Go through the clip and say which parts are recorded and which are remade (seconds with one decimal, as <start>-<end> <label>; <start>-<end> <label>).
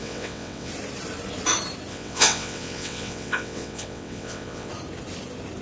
0.0-0.7 remade; 0.7-1.9 recorded; 1.9-4.7 remade; 4.7-5.6 recorded